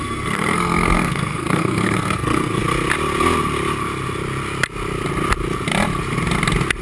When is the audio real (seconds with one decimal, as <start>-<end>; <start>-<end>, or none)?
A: 2.6-6.8